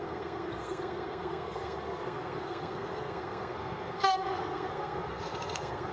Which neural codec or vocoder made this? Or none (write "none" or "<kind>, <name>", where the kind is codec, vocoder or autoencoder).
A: codec, SNAC